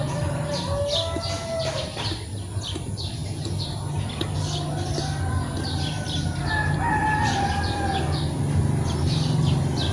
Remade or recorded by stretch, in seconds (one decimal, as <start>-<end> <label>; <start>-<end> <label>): 0.0-9.9 recorded